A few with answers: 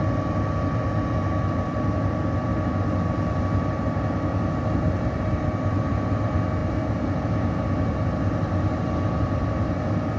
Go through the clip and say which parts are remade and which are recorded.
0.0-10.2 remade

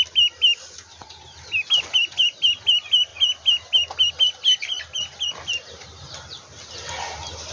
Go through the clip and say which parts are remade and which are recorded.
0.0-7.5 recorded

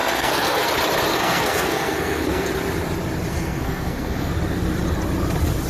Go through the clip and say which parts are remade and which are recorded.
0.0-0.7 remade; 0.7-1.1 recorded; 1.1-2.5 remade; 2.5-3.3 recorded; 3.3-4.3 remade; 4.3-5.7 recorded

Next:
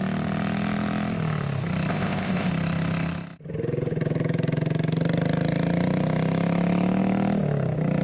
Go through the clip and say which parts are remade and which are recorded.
0.0-1.9 recorded; 1.9-2.5 remade; 2.5-8.0 recorded

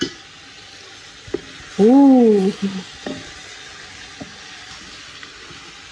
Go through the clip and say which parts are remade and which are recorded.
0.0-5.9 recorded